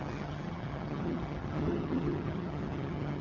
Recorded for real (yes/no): no